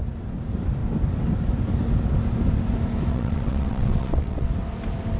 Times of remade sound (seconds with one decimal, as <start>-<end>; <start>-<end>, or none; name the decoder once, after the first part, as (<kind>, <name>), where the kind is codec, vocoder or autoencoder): 3.1-4.5 (vocoder, WaveNeXt)